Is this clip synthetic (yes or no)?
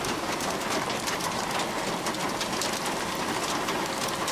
no